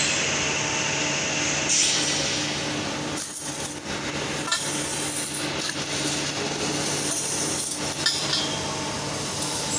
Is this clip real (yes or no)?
yes